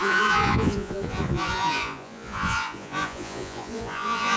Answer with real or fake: fake